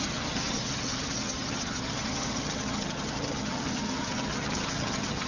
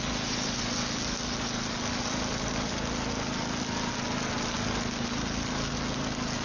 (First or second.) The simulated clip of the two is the first